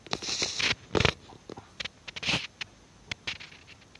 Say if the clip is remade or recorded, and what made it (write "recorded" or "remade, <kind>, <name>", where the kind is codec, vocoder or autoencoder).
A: recorded